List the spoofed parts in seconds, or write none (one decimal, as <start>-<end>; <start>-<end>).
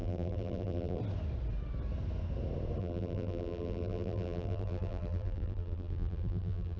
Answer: 0.0-1.0; 2.8-6.8